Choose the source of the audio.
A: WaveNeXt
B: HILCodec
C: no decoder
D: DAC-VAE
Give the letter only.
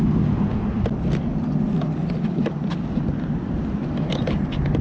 C